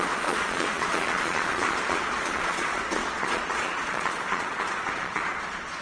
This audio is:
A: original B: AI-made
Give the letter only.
B